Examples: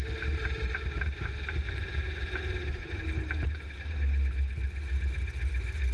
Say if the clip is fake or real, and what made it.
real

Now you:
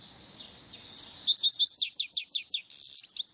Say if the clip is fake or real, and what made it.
real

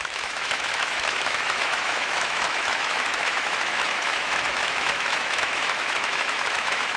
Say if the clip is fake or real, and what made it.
fake, autoencoder, DAC-VAE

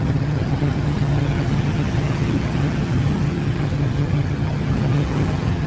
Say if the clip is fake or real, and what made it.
fake, vocoder, HiFi-GAN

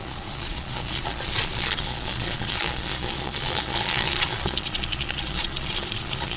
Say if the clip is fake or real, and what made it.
fake, vocoder, Vocos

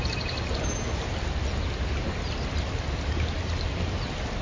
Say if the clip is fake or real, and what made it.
real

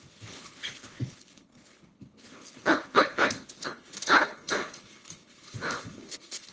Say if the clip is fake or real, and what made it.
fake, codec, HILCodec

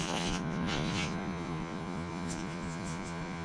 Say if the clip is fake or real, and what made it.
fake, vocoder, Vocos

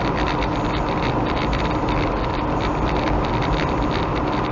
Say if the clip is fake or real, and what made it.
real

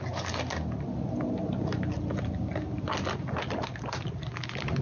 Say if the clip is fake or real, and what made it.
real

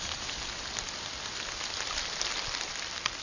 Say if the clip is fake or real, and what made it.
real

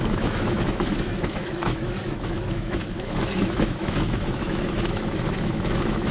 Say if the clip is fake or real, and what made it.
fake, autoencoder, DAC-VAE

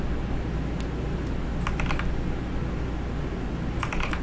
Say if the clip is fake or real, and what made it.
real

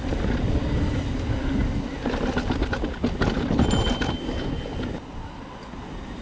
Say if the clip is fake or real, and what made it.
real